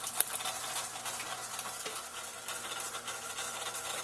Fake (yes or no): no